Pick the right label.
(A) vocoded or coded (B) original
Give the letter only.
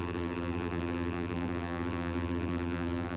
A